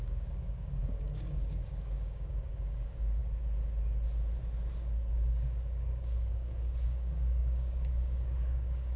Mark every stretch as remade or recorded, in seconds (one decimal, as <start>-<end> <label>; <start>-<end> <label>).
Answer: 0.0-3.2 remade; 3.2-5.1 recorded; 5.1-9.0 remade